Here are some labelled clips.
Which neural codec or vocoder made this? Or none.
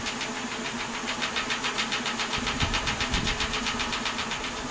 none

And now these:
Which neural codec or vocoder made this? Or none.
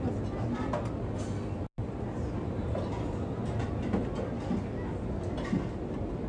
none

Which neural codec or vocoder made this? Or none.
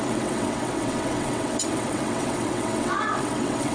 vocoder, WaveNeXt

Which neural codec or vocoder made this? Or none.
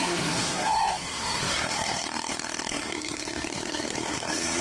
codec, SNAC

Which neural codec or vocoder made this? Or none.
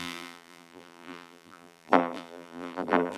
vocoder, BigVGAN v2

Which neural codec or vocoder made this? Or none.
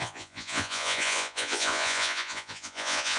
vocoder, Vocos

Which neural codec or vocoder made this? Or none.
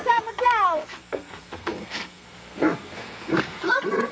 codec, SNAC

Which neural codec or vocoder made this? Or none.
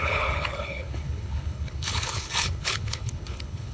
codec, HILCodec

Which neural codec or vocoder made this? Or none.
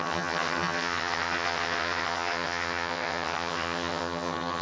vocoder, HiFi-GAN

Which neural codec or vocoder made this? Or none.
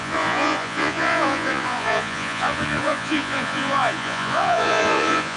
vocoder, Vocos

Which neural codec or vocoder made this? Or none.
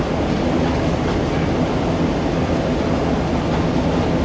none